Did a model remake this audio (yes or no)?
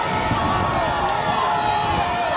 no